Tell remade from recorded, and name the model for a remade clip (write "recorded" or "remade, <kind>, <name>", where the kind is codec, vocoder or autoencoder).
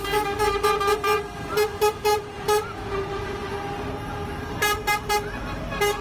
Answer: recorded